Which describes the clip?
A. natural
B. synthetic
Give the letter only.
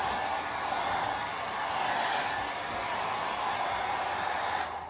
A